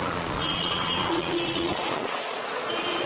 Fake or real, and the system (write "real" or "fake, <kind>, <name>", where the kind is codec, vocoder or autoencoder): fake, vocoder, Vocos